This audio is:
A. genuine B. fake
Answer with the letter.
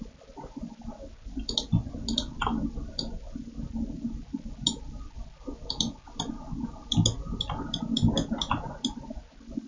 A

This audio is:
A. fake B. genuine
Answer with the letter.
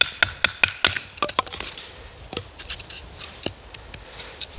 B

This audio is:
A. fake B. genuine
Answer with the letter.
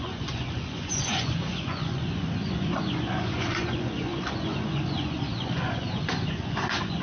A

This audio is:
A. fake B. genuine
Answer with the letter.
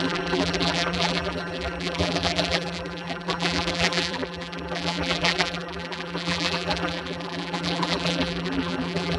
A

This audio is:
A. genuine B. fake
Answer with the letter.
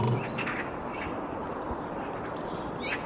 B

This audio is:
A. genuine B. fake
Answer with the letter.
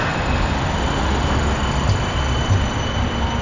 A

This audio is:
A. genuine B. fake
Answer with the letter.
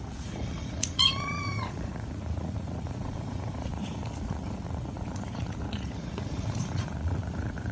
B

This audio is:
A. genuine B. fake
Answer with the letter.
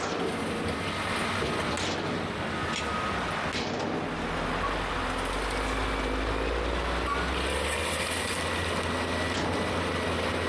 A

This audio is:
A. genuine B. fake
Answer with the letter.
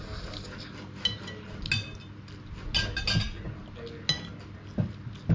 A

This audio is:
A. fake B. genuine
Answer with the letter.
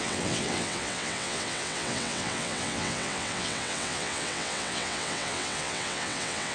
A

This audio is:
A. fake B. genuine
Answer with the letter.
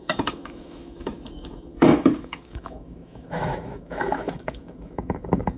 A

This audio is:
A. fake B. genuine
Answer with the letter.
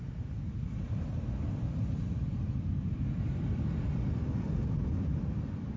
B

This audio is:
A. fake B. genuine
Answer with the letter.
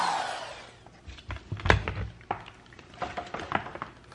B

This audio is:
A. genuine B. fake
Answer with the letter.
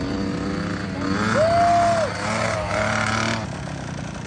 A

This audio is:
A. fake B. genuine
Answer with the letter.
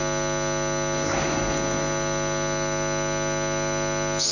B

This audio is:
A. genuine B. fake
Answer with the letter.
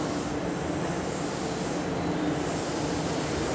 B